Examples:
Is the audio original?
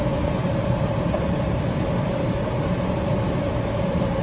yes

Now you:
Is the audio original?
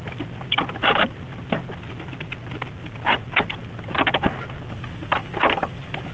yes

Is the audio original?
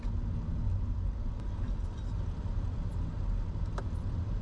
yes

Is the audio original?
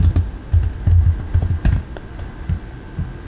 yes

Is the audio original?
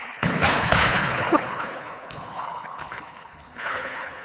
no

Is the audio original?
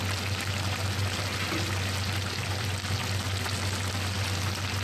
yes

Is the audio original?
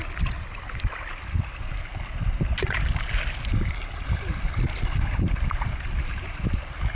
yes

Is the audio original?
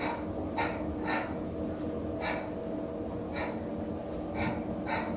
yes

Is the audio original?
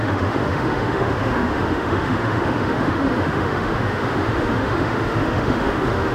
no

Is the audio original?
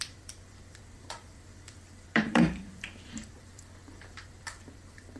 no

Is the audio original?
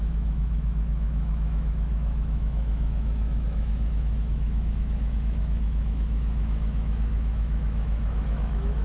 no